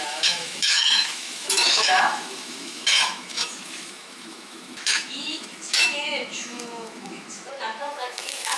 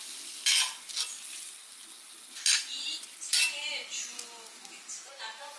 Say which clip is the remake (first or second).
first